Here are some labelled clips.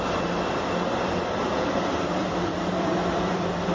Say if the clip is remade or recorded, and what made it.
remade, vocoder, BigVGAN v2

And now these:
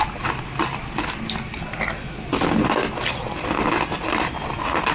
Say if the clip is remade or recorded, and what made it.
recorded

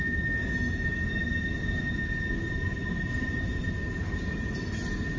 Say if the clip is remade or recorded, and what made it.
recorded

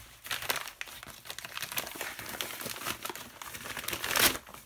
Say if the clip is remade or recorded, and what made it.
recorded